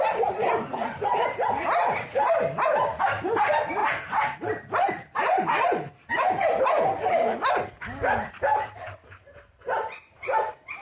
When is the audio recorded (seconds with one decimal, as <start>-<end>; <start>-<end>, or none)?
0.0-3.8; 6.1-8.5; 9.5-10.8